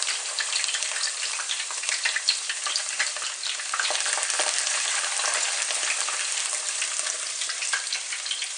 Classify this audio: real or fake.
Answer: fake